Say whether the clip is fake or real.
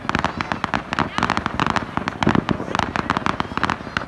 real